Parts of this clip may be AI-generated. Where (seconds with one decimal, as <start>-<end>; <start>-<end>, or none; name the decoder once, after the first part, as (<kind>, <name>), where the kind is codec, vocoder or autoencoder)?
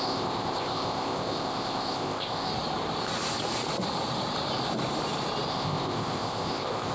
0.0-2.5 (codec, ZipCodec); 5.5-6.9